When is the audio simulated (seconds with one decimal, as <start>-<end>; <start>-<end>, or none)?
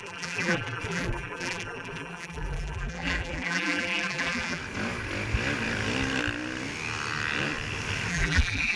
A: 0.0-4.6; 8.1-8.8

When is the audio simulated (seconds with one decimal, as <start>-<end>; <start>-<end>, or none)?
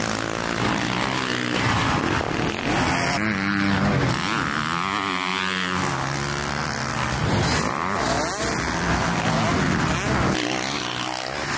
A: none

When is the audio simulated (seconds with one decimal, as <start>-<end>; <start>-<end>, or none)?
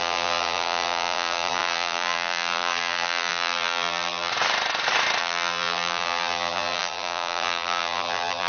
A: 0.0-4.3; 5.2-8.5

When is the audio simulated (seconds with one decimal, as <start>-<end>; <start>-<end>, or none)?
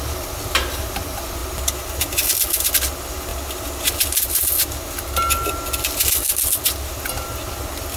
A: none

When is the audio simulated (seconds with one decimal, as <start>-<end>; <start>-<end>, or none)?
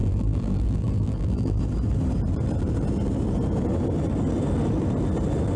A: 0.0-1.6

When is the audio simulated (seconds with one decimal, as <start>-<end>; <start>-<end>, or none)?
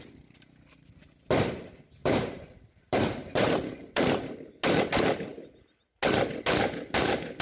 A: 2.0-4.5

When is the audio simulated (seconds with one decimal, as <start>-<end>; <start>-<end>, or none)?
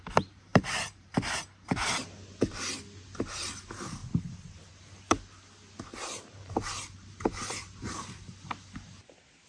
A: 0.5-1.4; 5.9-8.1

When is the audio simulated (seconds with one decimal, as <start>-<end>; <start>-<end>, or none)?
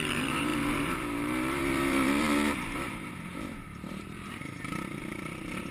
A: 0.0-5.7